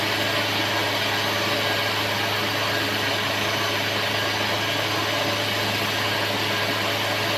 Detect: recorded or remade recorded